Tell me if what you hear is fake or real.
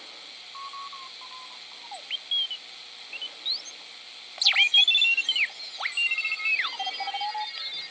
real